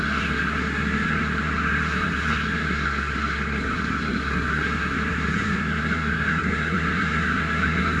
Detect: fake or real fake